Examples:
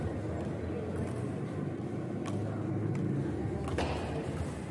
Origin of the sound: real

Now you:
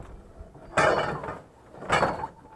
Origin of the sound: real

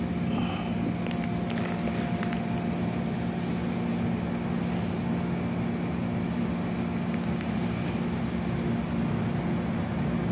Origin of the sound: real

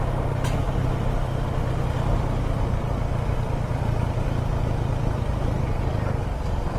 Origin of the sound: real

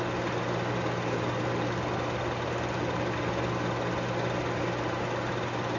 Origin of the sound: real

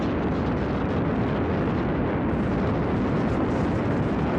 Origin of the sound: real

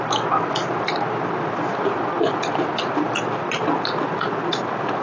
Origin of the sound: real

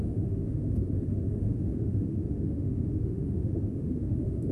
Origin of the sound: fake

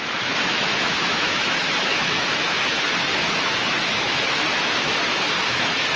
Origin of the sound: fake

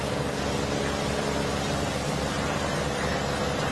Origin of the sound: real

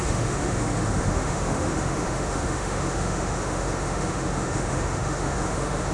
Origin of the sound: fake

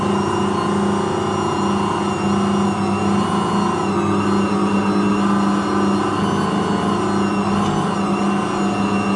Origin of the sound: real